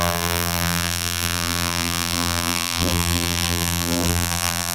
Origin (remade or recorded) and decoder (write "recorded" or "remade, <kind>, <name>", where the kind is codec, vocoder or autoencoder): remade, vocoder, BigVGAN v2